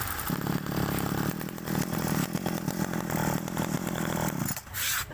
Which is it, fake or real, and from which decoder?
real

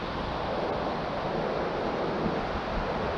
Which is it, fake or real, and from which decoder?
real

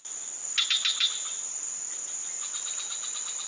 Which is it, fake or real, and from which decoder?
real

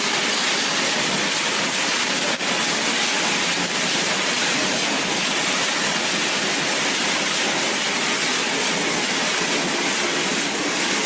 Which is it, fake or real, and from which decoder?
real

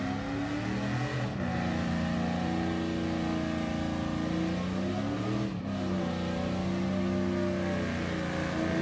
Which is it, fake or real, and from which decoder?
real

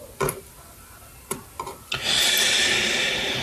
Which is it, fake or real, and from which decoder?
real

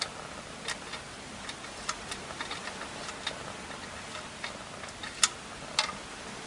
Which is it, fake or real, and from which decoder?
real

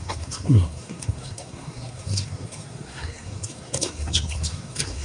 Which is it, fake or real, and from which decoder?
fake, codec, SNAC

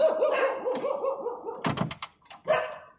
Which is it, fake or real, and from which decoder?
real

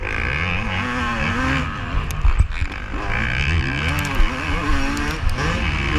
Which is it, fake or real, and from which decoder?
real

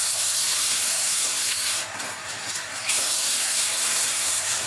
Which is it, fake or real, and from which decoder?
fake, codec, SNAC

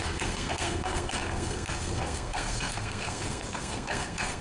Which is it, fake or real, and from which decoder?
fake, codec, SNAC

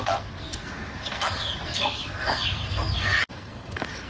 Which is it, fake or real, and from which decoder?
fake, codec, SNAC